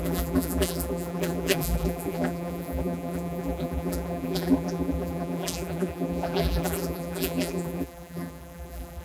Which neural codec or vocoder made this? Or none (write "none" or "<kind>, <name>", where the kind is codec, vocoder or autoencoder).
vocoder, BigVGAN v2